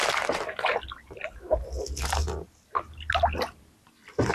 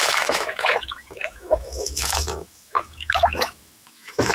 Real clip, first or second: first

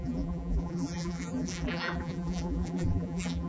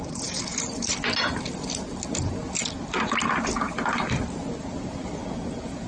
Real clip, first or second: second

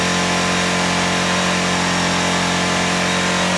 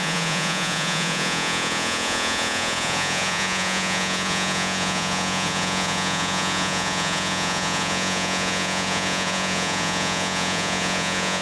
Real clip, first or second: first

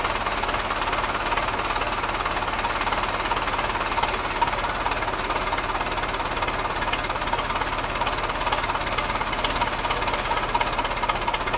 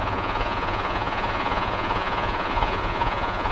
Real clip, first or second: first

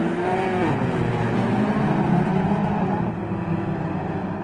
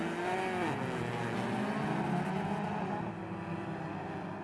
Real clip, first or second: second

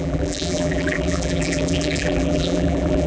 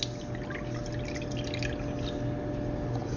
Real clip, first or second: second